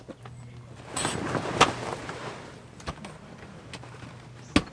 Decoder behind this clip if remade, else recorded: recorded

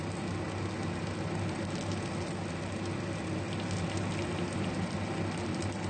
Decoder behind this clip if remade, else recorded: recorded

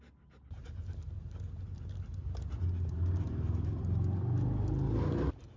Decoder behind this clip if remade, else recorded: recorded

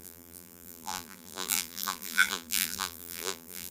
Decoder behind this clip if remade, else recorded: remade, vocoder, BigVGAN v2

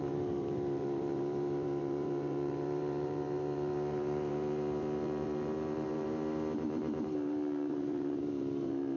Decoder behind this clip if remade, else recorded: remade, vocoder, BigVGAN v2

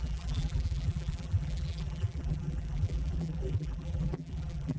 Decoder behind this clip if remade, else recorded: remade, vocoder, BigVGAN v2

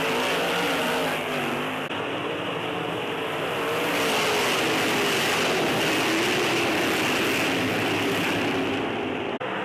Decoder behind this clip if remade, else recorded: recorded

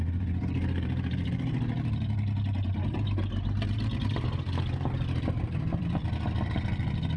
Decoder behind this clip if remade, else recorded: remade, vocoder, BigVGAN v2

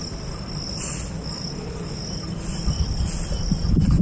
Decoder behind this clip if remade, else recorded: recorded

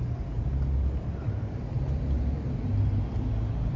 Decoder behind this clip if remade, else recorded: recorded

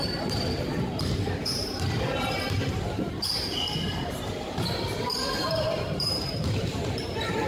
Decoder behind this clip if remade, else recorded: remade, vocoder, BigVGAN v2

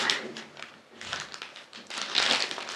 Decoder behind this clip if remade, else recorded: recorded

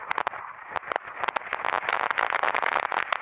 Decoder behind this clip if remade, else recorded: recorded